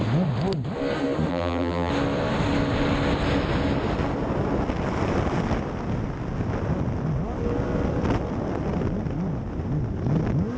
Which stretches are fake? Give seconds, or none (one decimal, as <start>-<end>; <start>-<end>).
1.3-1.9